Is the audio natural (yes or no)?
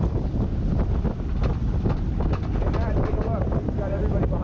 yes